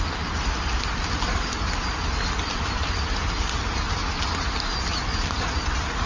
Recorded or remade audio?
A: recorded